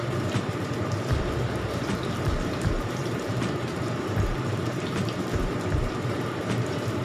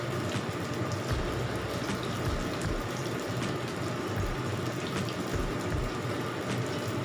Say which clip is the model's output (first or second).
first